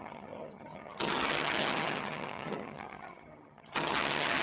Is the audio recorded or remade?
remade